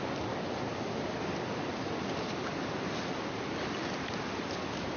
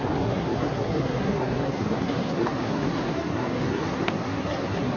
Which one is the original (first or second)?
first